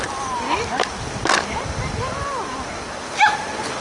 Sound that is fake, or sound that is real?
real